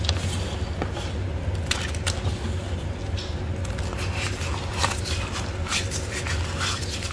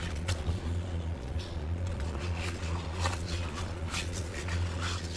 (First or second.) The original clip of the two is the first